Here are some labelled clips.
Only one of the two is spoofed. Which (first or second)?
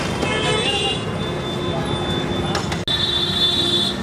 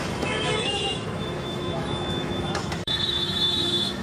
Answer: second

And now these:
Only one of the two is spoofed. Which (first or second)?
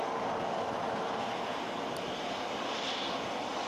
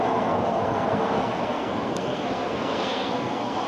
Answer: second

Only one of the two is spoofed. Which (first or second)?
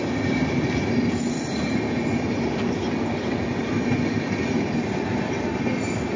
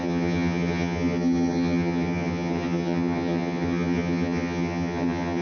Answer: second